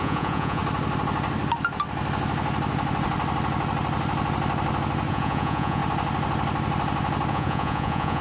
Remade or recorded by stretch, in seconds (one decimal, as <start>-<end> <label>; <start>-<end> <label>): 0.0-0.6 remade; 0.6-5.1 recorded; 5.1-5.8 remade; 5.8-7.3 recorded; 7.3-8.2 remade